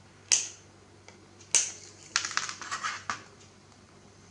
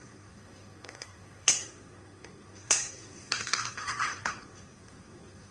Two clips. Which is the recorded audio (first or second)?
first